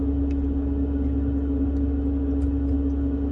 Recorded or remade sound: recorded